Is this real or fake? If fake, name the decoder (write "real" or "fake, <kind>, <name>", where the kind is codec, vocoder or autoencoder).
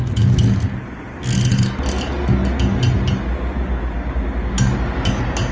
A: real